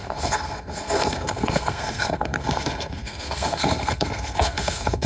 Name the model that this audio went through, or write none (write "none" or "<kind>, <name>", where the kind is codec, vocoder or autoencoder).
codec, SNAC